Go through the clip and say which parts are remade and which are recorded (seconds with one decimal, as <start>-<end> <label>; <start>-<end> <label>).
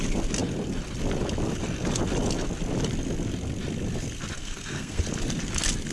0.0-4.4 recorded; 4.4-5.0 remade; 5.0-5.9 recorded